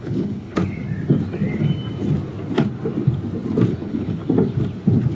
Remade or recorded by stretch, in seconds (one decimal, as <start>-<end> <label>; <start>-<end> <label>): 0.0-0.6 remade; 0.6-3.7 recorded; 3.7-4.2 remade; 4.2-5.1 recorded